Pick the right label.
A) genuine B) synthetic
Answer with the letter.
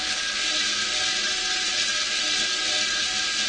A